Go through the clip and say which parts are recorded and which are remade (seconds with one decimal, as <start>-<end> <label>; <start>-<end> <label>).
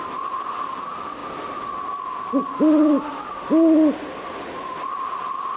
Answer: 0.0-5.6 recorded